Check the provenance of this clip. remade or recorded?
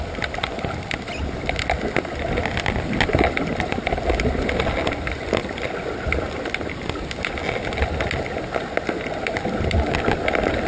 recorded